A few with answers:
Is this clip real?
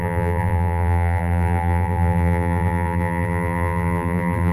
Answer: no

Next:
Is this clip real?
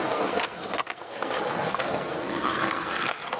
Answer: no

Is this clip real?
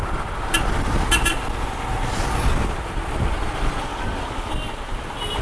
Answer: yes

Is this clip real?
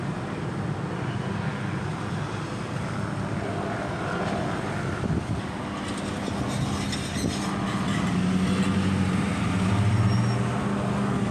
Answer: yes